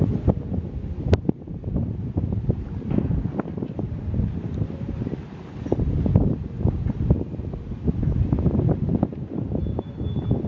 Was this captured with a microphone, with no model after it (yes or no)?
yes